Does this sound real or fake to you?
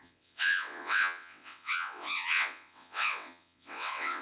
fake